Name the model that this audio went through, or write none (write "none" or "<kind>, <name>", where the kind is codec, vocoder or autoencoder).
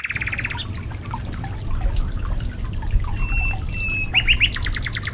none